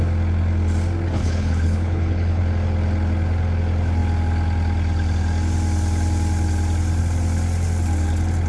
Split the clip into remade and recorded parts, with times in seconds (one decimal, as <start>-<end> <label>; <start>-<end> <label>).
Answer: 0.0-1.2 recorded; 1.2-2.4 remade; 2.4-8.5 recorded